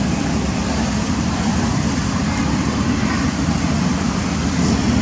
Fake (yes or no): yes